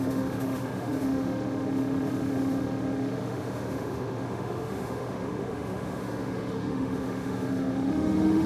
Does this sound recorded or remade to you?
remade